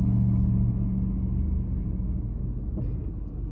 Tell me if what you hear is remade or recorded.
recorded